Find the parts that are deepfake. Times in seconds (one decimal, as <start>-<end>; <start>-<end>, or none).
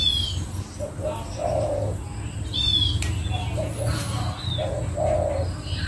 none